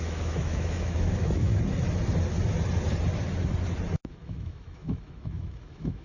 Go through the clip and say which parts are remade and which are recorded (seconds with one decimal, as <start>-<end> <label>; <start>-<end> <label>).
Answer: 0.0-1.5 remade; 1.5-4.1 recorded; 4.1-6.0 remade